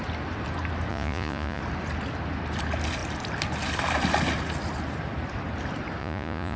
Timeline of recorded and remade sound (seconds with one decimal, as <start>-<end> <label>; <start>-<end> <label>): 0.0-0.9 recorded; 0.9-1.6 remade; 1.6-6.0 recorded; 6.0-6.6 remade